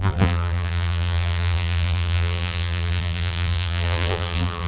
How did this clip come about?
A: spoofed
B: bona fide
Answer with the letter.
A